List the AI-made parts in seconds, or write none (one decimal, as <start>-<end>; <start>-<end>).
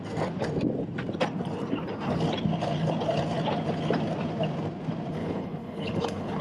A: 5.2-6.4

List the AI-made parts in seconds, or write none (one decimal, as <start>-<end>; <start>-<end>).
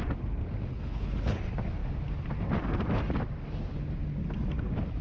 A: 0.7-1.4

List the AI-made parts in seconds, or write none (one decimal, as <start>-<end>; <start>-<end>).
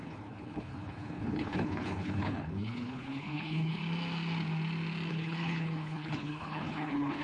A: 0.0-3.8; 5.1-7.2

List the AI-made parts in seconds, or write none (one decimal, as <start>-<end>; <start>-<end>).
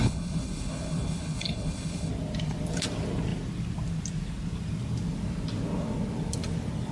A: 0.0-2.1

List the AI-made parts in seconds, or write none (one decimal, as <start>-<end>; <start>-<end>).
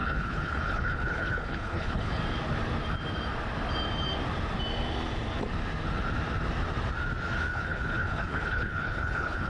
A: 0.0-2.2; 7.5-9.5